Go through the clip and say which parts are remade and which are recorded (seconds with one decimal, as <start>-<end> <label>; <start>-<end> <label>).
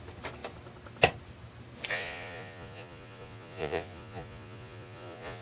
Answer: 0.0-1.9 recorded; 1.9-5.4 remade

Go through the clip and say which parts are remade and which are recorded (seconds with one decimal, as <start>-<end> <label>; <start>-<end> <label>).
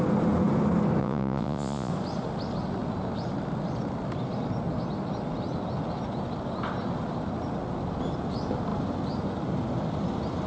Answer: 0.0-1.0 recorded; 1.0-1.9 remade; 1.9-10.5 recorded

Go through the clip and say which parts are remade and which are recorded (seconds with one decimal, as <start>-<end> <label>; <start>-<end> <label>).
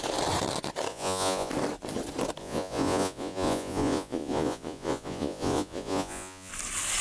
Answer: 0.0-0.9 recorded; 0.9-1.5 remade; 1.5-2.4 recorded; 2.4-6.5 remade; 6.5-7.0 recorded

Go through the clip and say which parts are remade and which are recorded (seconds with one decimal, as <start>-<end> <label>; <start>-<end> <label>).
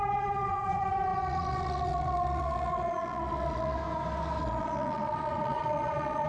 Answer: 0.0-3.8 remade; 3.8-4.4 recorded; 4.4-6.3 remade